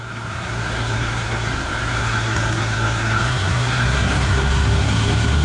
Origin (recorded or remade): remade